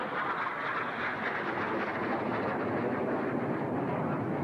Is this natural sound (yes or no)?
yes